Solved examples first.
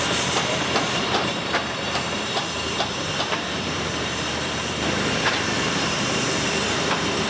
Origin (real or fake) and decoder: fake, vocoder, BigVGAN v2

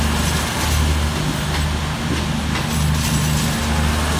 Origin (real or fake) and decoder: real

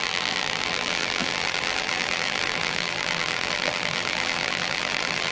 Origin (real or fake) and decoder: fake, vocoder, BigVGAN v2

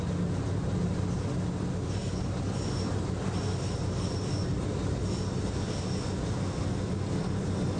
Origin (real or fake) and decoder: real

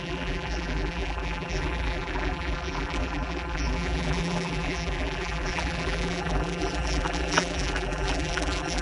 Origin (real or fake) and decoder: fake, vocoder, BigVGAN v2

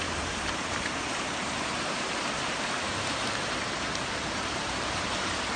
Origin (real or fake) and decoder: fake, vocoder, BigVGAN v2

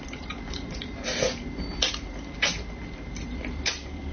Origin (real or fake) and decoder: real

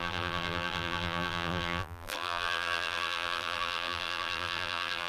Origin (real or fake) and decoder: fake, vocoder, BigVGAN v2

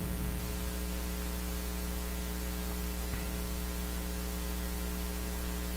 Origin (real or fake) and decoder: real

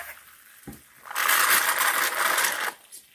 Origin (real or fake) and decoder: real